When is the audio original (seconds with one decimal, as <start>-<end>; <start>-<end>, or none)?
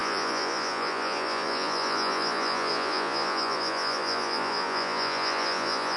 none